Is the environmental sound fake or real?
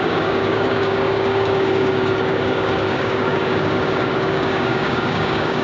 fake